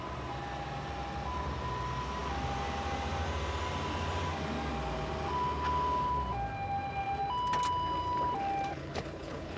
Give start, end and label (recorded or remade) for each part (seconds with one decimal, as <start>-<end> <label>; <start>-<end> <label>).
0.0-8.7 recorded; 8.7-9.6 remade